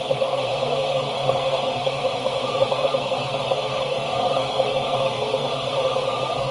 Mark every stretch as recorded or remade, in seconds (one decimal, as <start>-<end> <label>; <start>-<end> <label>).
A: 0.0-6.5 remade